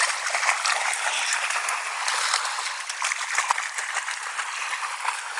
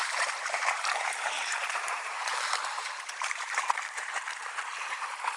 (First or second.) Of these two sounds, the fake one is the second